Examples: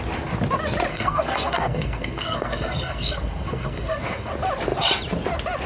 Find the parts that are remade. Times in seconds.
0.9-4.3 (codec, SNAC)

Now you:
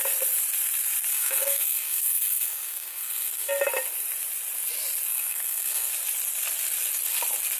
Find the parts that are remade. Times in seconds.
1.1-3.5 (codec, SNAC); 5.1-5.9

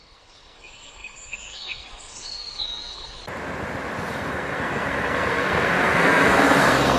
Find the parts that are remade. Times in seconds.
0.0-3.2 (codec, SNAC); 4.1-7.0